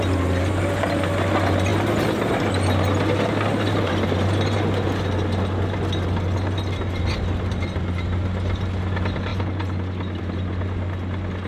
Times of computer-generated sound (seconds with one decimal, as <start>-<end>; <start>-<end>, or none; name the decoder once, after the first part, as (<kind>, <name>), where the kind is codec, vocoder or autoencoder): none